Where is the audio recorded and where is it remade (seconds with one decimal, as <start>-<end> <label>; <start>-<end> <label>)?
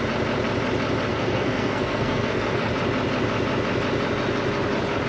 0.0-1.1 recorded; 1.1-2.7 remade; 2.7-5.1 recorded